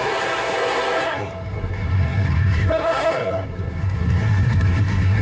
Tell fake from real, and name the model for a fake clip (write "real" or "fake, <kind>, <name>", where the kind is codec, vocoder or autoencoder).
fake, codec, SNAC